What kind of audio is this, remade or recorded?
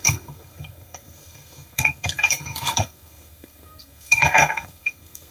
remade